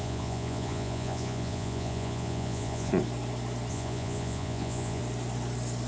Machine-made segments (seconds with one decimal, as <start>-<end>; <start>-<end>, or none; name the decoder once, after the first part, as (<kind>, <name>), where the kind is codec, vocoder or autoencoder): 0.0-2.9 (vocoder, Vocos); 3.7-5.0